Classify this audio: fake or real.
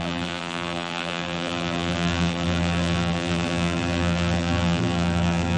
fake